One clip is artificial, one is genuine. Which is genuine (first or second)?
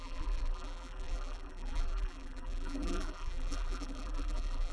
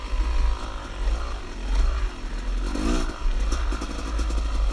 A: second